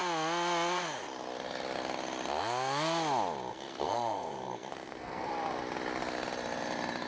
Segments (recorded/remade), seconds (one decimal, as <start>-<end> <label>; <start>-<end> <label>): 0.0-3.5 recorded; 3.5-5.3 remade; 5.3-7.1 recorded